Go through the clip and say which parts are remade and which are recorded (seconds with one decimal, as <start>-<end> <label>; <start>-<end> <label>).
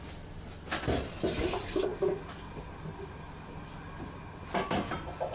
0.0-5.3 recorded